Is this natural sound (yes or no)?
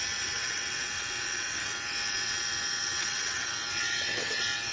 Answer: no